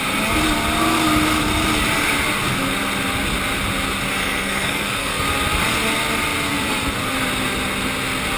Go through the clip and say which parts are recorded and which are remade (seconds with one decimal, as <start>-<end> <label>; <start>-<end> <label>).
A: 0.0-4.2 recorded; 4.2-5.2 remade; 5.2-8.4 recorded